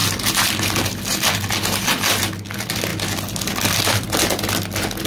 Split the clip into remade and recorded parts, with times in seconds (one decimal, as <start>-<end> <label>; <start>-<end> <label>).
0.0-5.1 recorded